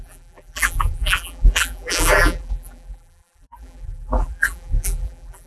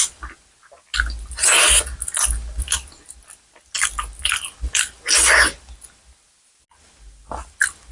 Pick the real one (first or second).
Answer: second